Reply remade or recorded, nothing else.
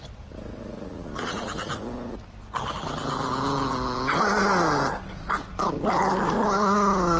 recorded